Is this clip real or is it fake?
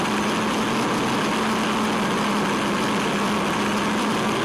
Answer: real